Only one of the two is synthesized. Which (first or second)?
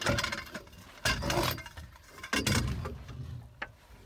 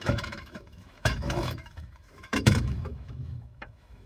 second